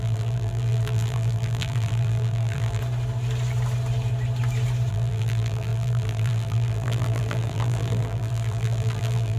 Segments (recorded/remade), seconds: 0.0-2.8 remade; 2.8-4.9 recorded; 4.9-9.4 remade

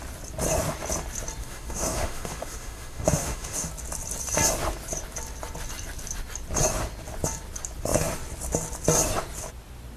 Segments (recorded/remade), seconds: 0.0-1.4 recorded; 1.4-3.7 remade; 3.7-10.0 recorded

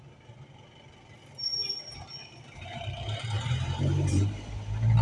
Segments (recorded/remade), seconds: 0.0-1.5 recorded; 1.5-4.5 remade; 4.5-5.0 recorded

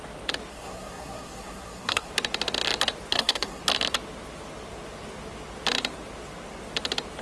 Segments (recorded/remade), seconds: 0.0-0.5 recorded; 0.5-2.1 remade; 2.1-3.1 recorded; 3.1-3.6 remade; 3.6-7.2 recorded

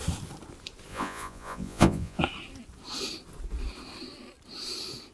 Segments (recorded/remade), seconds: 0.0-0.9 recorded; 0.9-2.2 remade; 2.2-5.1 recorded